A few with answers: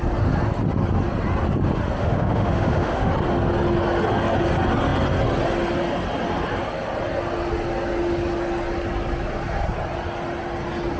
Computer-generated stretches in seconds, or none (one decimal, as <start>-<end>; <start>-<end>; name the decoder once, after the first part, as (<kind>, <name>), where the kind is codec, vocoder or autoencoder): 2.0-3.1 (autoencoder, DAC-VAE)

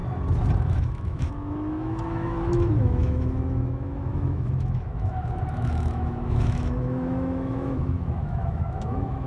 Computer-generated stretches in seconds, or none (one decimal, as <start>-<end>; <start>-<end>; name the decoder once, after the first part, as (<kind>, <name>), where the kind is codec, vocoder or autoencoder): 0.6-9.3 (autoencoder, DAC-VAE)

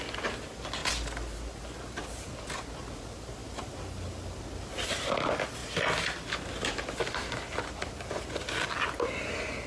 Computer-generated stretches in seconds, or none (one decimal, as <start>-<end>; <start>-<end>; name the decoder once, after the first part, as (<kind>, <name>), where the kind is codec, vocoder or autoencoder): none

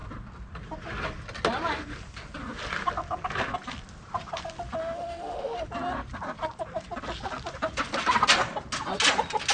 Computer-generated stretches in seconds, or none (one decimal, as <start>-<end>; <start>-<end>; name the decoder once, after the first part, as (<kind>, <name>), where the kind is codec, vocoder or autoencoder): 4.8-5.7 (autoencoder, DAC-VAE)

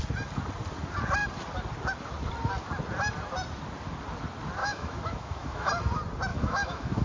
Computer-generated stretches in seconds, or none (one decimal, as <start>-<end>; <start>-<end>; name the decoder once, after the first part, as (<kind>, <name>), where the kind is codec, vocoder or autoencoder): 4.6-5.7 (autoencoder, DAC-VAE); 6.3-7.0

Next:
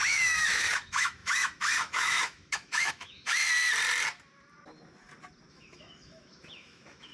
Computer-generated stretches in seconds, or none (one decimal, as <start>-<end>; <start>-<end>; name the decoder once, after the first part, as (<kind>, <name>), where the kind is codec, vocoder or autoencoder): 0.0-3.4 (autoencoder, DAC-VAE); 5.5-7.1

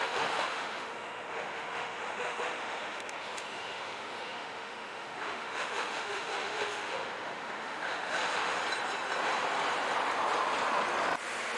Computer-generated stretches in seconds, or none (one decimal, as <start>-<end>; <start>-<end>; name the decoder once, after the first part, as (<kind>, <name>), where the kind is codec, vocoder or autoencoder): 0.0-8.6 (autoencoder, DAC-VAE)

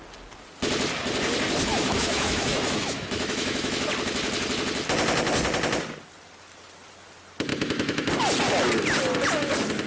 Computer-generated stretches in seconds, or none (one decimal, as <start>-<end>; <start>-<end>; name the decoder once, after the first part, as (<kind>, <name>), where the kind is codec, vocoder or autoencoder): 1.7-3.9 (autoencoder, DAC-VAE); 7.5-8.1